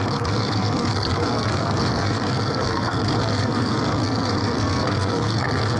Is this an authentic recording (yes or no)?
no